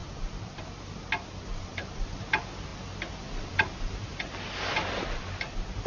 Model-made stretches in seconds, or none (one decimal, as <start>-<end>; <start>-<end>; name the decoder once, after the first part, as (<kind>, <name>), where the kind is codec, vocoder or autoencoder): none